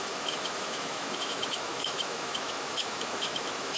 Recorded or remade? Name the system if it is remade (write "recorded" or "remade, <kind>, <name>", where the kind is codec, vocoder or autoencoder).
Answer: remade, autoencoder, DAC-VAE